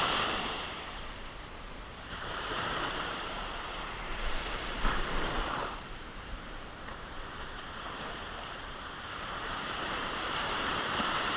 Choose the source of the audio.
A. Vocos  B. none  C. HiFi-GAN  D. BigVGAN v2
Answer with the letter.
D